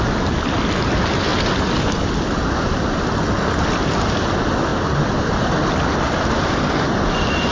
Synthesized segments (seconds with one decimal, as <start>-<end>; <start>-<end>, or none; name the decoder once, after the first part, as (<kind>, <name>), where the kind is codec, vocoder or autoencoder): none